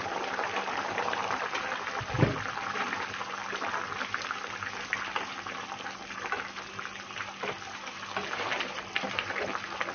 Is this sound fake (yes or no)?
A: yes